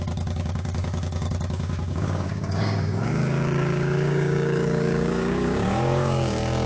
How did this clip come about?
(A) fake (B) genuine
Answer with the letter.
A